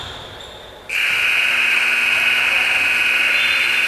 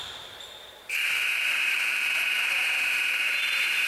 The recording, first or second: first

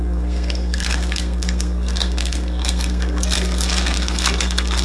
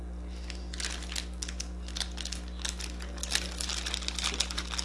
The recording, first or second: second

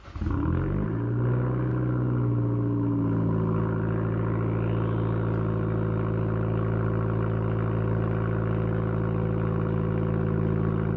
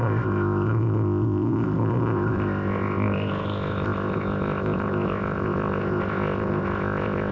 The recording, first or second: first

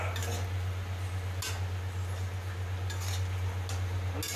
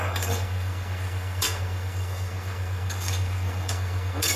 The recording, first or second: first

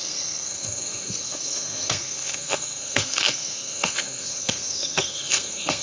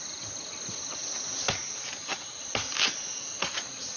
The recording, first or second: second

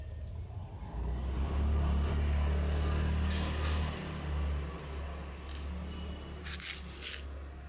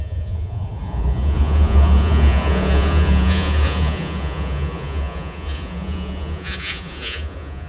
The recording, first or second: first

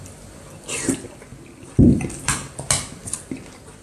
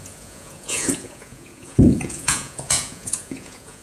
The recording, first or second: first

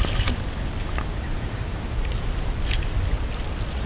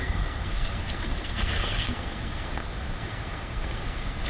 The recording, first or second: first